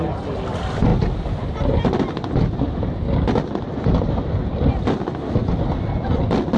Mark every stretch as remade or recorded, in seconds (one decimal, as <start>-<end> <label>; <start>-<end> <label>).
0.0-6.6 recorded